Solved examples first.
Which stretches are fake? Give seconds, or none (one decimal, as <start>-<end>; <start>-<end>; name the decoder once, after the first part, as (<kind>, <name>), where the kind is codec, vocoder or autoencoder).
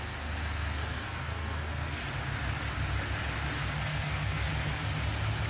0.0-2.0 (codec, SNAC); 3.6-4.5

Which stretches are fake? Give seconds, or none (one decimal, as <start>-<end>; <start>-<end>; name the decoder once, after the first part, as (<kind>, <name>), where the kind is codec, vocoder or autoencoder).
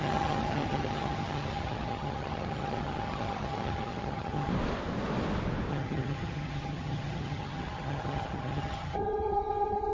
0.0-4.5 (vocoder, HiFi-GAN); 5.7-9.9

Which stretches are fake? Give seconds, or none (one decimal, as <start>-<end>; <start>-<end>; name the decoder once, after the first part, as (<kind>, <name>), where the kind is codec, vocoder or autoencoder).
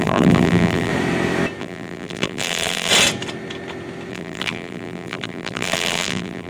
0.0-0.9 (vocoder, BigVGAN v2); 1.6-2.9; 4.1-6.5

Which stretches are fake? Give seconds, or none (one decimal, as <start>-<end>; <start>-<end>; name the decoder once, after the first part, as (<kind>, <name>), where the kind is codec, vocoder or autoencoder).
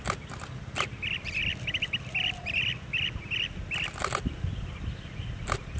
none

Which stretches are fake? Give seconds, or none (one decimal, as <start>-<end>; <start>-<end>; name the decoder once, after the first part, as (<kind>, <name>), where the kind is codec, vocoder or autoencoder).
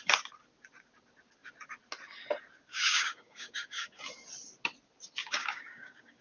2.7-4.0 (codec, DAC); 5.2-6.2